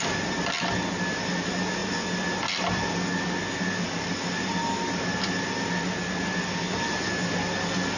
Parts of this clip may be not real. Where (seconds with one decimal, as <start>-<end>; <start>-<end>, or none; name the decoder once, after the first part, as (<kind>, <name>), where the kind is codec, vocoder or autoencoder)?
none